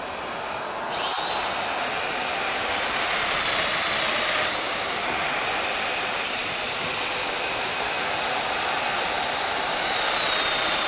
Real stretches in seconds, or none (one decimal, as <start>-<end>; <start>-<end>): 0.0-10.9